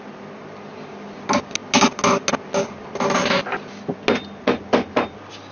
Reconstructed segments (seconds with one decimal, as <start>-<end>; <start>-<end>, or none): none